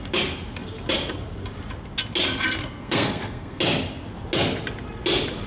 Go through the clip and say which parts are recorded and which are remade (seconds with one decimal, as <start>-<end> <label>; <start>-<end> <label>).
0.0-2.6 recorded; 2.6-3.6 remade; 3.6-5.5 recorded